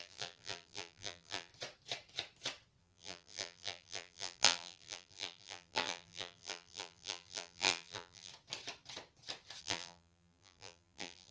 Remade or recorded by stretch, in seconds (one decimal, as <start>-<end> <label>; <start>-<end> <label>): 0.0-1.5 remade; 1.5-2.8 recorded; 2.8-8.3 remade; 8.3-9.6 recorded; 9.6-11.3 remade